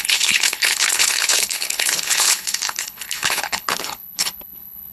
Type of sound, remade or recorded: remade